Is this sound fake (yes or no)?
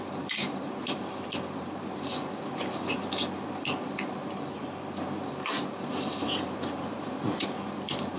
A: yes